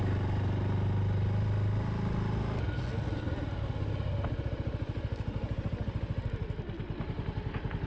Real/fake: real